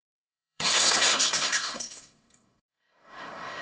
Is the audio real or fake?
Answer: fake